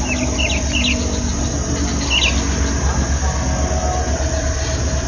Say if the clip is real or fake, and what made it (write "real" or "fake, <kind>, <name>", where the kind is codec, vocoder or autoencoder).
real